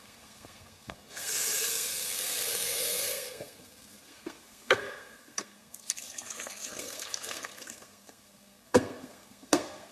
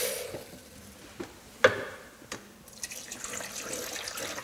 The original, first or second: second